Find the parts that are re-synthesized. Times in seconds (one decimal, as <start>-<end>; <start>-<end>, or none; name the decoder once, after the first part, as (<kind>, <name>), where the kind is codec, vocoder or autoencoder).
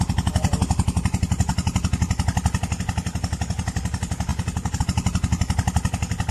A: none